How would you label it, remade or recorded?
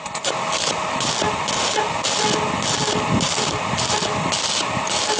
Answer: recorded